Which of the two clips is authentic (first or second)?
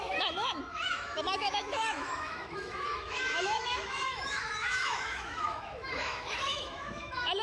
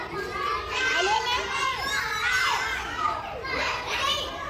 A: second